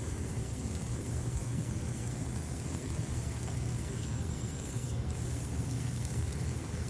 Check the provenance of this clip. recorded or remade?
remade